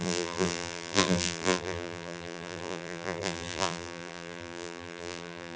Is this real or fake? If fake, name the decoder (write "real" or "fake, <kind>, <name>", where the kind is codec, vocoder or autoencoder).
fake, vocoder, BigVGAN v2